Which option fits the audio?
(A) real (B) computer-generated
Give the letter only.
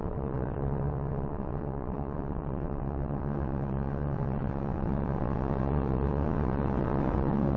B